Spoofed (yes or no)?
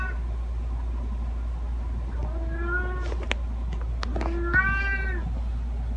no